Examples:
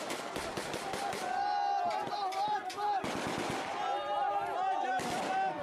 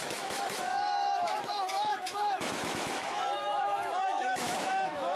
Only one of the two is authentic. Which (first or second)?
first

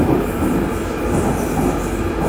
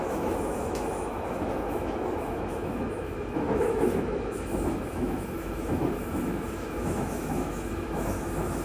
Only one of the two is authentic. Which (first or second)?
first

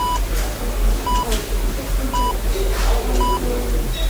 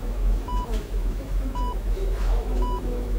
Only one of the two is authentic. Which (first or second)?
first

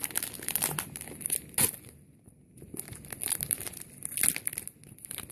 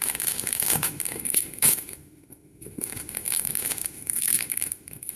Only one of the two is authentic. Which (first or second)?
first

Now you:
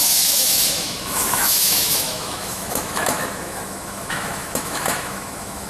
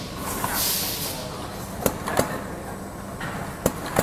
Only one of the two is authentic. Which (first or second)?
second